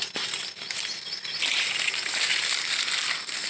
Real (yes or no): yes